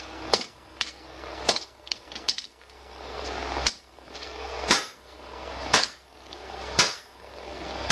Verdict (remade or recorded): remade